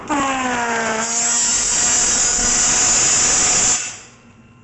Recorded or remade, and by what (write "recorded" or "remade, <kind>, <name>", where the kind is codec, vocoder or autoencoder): recorded